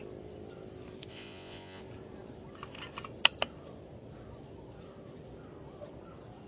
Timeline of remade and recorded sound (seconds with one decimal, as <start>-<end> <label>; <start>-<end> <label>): 0.0-1.1 recorded; 1.1-1.8 remade; 1.8-6.5 recorded